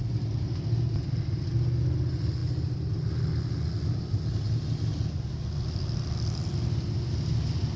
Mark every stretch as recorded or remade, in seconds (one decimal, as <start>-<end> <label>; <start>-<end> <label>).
0.0-7.8 recorded